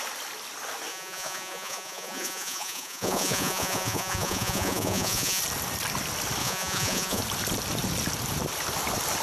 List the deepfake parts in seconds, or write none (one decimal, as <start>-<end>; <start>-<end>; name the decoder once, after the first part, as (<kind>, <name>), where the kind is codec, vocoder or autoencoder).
0.9-5.4 (vocoder, Vocos); 6.4-7.2